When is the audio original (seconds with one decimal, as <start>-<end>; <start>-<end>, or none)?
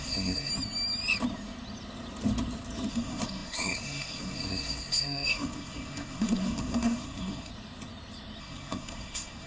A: 0.5-2.9; 7.5-8.4